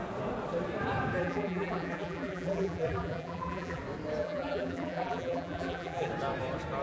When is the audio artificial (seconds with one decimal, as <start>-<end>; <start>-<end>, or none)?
1.2-3.8; 4.2-6.1